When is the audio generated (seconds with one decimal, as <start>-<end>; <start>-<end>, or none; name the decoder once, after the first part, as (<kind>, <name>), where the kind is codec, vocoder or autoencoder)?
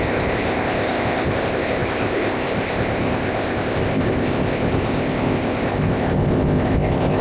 0.0-7.2 (codec, ZipCodec)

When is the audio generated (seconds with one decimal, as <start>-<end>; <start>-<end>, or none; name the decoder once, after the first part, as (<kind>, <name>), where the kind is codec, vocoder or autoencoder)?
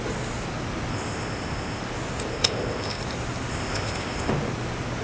0.9-1.8 (codec, ZipCodec); 2.3-3.0; 3.5-4.3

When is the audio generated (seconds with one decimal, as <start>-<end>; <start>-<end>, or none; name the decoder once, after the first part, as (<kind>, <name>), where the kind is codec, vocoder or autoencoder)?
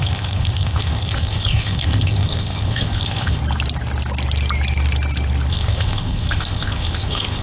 0.0-3.4 (codec, ZipCodec); 5.5-7.4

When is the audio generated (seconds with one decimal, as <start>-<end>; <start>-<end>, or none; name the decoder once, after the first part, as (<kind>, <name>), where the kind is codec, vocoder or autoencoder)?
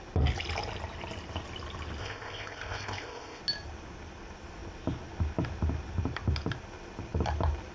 2.0-3.4 (codec, ZipCodec)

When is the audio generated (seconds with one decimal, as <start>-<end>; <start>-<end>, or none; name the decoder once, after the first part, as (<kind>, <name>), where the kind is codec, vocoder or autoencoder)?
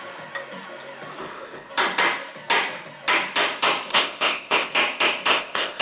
1.2-1.7 (codec, ZipCodec); 3.9-4.7; 5.3-5.8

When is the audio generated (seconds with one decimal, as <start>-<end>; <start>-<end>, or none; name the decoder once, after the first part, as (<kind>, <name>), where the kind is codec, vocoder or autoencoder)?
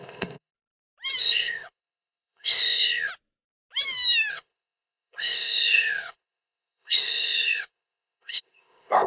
0.0-0.5 (codec, ZipCodec); 1.2-3.1; 4.3-9.1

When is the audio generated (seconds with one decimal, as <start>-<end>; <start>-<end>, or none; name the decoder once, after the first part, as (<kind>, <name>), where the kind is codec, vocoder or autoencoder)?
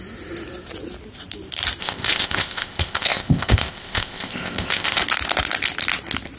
1.8-5.0 (codec, ZipCodec)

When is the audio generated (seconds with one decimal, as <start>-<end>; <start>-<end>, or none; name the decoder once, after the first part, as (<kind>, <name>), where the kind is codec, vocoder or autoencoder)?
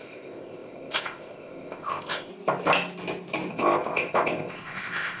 0.0-2.3 (codec, ZipCodec); 3.5-5.2